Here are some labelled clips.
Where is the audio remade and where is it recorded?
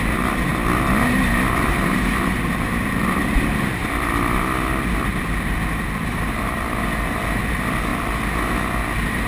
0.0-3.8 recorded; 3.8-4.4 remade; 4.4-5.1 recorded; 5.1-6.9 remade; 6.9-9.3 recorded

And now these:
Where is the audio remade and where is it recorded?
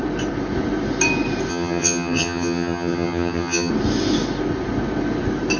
0.0-1.5 recorded; 1.5-3.7 remade; 3.7-5.6 recorded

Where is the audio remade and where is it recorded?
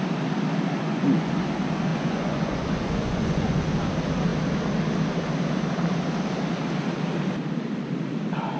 0.0-0.8 recorded; 0.8-1.3 remade; 1.3-1.9 recorded; 1.9-3.7 remade; 3.7-8.6 recorded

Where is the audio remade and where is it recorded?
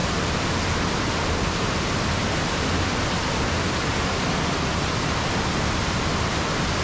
0.0-6.8 recorded